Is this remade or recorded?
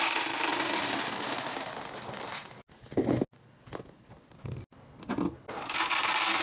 recorded